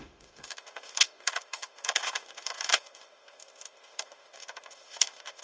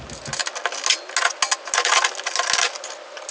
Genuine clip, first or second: second